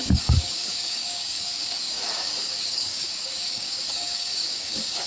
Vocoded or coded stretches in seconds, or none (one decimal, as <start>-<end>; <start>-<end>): 0.0-5.1